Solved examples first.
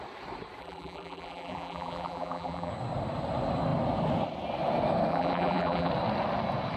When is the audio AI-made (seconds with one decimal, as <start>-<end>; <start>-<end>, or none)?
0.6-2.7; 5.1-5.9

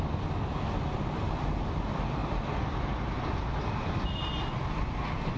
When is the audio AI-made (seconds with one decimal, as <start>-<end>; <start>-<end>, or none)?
none

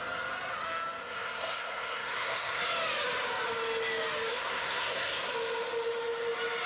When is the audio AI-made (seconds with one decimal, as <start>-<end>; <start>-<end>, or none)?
1.0-2.6; 4.3-5.3

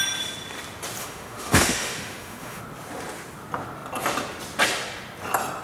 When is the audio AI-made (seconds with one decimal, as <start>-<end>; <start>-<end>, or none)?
1.0-2.6